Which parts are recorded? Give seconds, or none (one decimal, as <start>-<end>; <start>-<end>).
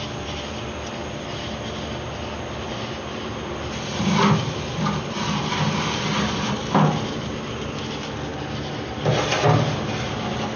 0.0-10.6